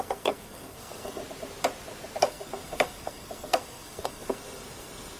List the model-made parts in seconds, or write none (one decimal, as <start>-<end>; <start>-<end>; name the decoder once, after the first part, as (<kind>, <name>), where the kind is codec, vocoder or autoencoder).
0.0-1.2 (codec, SNAC); 2.2-5.2